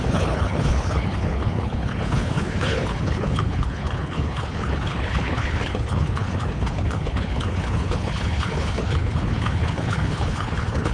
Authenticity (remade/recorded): remade